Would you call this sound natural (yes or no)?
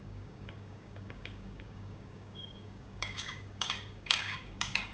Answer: no